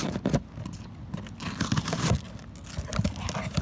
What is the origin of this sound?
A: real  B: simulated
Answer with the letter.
A